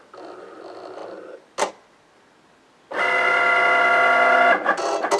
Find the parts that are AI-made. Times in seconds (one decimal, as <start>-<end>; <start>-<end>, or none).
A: none